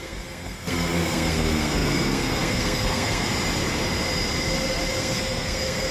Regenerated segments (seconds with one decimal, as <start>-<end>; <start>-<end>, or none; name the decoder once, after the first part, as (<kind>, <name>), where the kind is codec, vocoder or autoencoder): 0.0-3.3 (codec, SNAC); 4.9-5.9